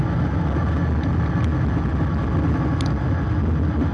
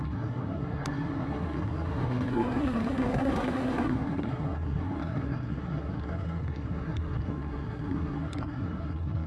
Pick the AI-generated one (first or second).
second